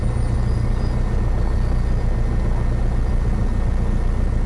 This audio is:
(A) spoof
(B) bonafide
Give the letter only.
B